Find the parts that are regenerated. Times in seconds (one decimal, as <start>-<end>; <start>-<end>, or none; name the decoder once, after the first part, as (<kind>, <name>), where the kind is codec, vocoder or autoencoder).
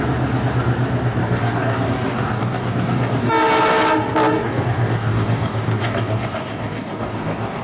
1.2-3.3 (codec, DAC); 4.4-7.6